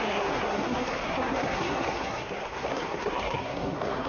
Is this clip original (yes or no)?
no